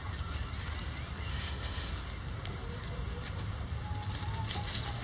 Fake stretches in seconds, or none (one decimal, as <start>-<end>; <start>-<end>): 1.3-1.9

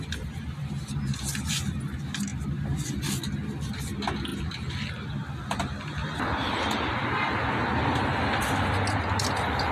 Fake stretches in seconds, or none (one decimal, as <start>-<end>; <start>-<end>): none

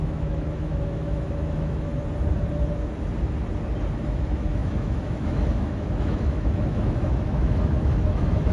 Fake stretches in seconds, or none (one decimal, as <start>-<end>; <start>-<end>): 0.0-1.9; 4.0-8.5

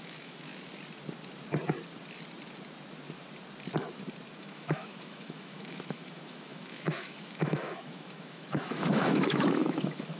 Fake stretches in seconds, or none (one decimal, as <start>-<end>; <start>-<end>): 0.0-0.5; 4.4-10.2

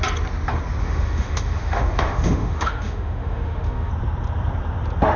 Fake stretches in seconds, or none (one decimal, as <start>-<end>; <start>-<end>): 0.8-3.9

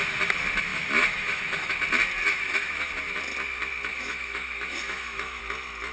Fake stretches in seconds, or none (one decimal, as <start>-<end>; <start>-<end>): 0.7-1.8; 2.3-2.9; 3.9-5.4

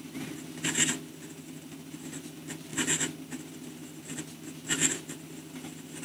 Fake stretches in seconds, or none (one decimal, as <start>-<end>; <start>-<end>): none

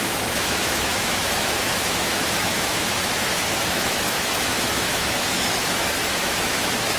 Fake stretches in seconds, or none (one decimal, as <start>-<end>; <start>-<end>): 0.0-7.0